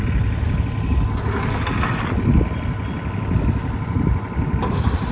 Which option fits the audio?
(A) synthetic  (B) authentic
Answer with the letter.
B